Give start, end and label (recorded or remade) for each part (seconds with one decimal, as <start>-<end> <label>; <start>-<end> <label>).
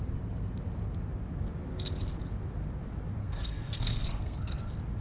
0.0-3.2 recorded; 3.2-4.6 remade; 4.6-5.0 recorded